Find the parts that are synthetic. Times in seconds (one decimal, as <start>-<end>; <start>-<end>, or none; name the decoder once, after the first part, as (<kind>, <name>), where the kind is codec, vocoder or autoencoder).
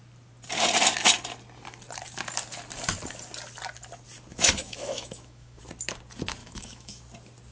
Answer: 4.3-5.6 (autoencoder, DAC-VAE); 6.4-7.0